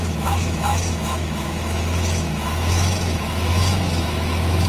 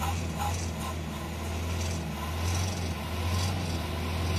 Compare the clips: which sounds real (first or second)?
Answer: second